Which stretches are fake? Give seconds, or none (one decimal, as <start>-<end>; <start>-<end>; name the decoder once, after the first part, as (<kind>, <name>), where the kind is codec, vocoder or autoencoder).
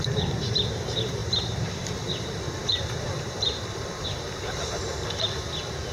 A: 1.2-4.7 (vocoder, BigVGAN v2)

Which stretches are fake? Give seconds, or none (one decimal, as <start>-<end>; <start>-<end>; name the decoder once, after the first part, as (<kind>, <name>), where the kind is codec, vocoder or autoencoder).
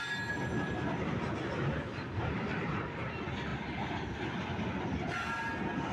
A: 1.9-2.8 (vocoder, BigVGAN v2)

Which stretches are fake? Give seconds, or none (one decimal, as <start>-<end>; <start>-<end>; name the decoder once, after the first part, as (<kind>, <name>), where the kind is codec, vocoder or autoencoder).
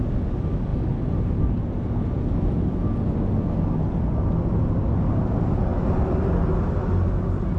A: none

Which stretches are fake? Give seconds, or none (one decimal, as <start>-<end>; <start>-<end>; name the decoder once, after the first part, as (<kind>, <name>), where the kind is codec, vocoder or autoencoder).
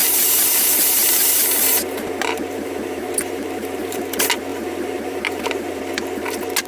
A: 0.0-4.0 (vocoder, BigVGAN v2); 4.5-5.8